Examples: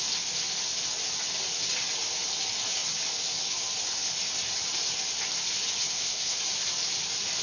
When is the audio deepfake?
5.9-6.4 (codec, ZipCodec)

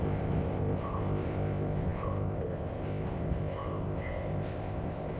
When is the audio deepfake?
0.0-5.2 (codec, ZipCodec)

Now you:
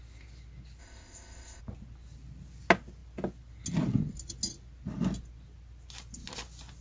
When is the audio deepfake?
0.8-1.6 (codec, ZipCodec)